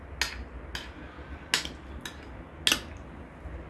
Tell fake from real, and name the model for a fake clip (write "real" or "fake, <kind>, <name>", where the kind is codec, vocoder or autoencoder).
real